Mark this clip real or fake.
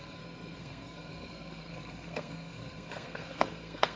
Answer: fake